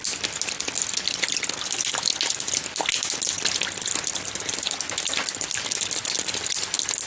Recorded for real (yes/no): yes